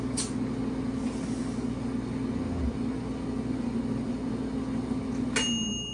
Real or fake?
real